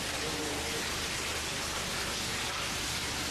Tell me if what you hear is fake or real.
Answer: real